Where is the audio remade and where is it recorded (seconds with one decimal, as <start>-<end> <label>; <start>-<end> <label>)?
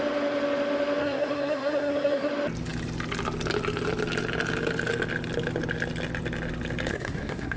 0.0-1.0 recorded; 1.0-2.3 remade; 2.3-6.9 recorded; 6.9-7.6 remade